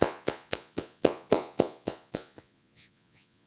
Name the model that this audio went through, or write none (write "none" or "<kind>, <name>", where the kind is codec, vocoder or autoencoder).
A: vocoder, Vocos